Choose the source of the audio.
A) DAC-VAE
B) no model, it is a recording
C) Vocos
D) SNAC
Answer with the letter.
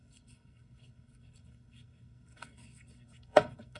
D